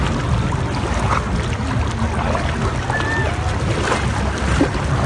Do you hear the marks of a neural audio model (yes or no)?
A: no